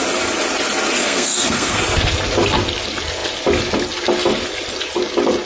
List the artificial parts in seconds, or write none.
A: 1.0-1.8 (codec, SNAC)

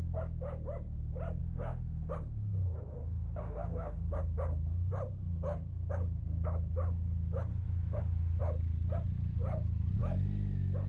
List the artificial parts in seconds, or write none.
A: 1.4-2.1 (autoencoder, DAC-VAE); 2.9-4.2; 7.5-8.4

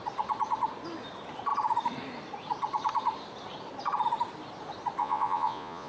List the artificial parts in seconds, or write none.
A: 5.0-5.9 (vocoder, Vocos)

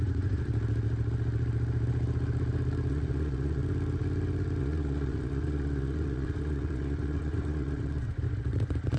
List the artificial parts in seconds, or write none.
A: 0.0-0.5 (vocoder, Vocos); 2.9-3.6; 4.6-9.0